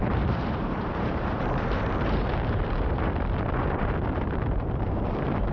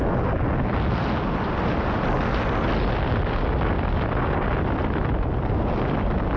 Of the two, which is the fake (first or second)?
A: first